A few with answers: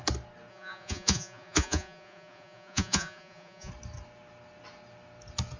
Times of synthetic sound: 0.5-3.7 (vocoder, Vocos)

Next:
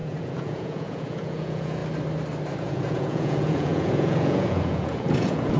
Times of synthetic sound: 0.0-1.8 (vocoder, Vocos); 2.6-5.6

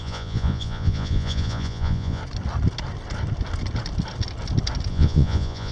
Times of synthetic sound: 0.0-2.2 (vocoder, Vocos); 4.9-5.7

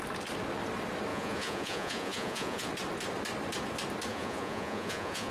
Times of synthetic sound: 1.1-2.7 (vocoder, Vocos); 4.1-5.3

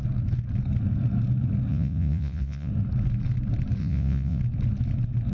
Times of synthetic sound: 1.7-2.7 (vocoder, Vocos); 3.8-4.4